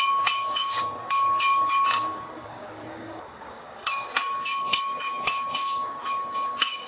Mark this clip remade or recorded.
remade